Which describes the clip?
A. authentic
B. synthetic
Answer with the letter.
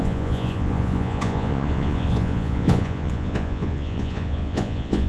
B